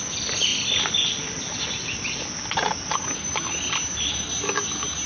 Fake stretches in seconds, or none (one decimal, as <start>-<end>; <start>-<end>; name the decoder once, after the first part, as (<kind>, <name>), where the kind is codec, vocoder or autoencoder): none